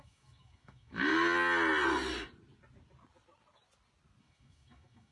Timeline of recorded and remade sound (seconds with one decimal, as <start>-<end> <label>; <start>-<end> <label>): 0.0-1.1 remade; 1.1-4.2 recorded; 4.2-5.1 remade